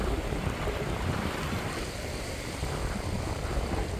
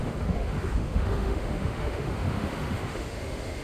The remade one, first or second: second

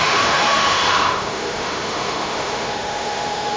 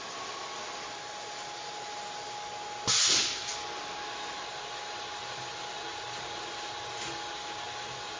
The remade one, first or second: first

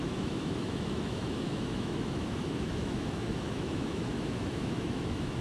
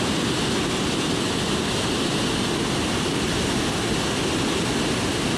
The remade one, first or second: first